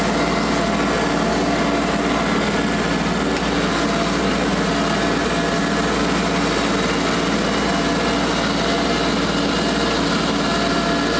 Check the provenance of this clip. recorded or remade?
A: recorded